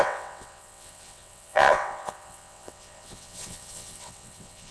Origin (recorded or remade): remade